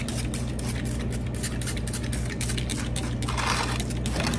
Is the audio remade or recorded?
recorded